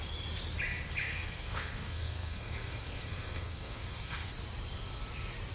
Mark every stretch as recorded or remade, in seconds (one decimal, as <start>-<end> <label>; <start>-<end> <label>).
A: 0.0-1.0 recorded; 1.0-4.3 remade; 4.3-5.5 recorded